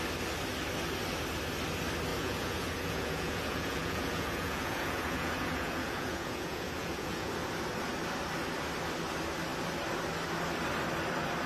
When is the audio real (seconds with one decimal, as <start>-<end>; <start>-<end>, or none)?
0.0-2.1; 7.3-11.5